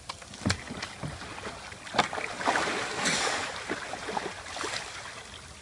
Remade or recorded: recorded